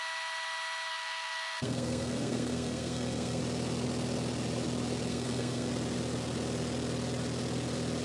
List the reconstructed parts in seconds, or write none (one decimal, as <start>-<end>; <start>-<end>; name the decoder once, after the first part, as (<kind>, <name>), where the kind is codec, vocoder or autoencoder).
0.9-3.4 (codec, SNAC); 5.1-5.7